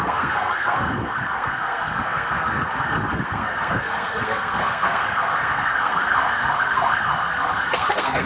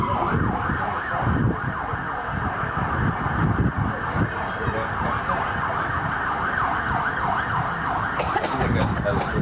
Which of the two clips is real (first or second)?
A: second